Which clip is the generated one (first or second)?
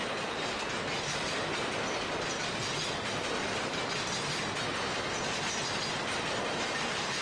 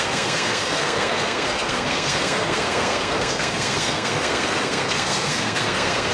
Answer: second